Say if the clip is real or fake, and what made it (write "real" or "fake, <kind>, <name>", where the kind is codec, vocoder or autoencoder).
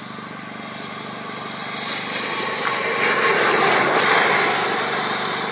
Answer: real